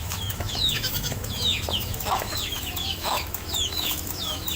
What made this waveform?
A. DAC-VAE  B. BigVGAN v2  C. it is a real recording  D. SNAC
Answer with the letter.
A